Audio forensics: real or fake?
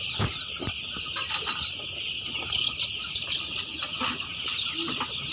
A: real